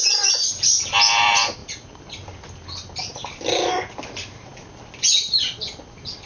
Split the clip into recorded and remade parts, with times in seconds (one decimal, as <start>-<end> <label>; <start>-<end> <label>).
0.0-6.3 recorded

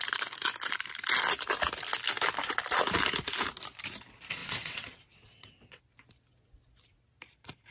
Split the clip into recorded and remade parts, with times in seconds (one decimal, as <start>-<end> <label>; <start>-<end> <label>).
0.0-4.4 recorded; 4.4-5.8 remade; 5.8-7.7 recorded

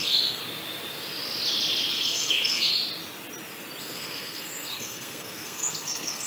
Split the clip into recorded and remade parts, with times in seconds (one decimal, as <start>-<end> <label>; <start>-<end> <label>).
0.0-0.4 remade; 0.4-1.9 recorded; 1.9-2.7 remade; 2.7-3.8 recorded; 3.8-6.3 remade

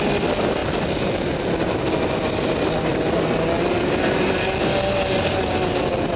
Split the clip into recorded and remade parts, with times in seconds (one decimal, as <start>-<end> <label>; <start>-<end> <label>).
0.0-6.2 recorded

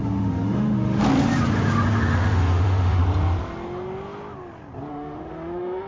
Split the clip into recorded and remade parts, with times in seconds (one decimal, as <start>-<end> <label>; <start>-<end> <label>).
0.0-1.0 remade; 1.0-2.0 recorded; 2.0-3.0 remade; 3.0-4.9 recorded; 4.9-5.9 remade

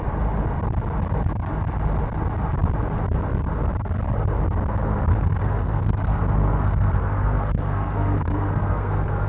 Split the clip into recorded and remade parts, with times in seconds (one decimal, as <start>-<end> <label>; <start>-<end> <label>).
0.0-5.1 recorded; 5.1-9.3 remade